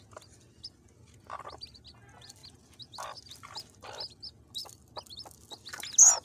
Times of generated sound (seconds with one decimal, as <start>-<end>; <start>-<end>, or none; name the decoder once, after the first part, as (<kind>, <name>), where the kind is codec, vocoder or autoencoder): none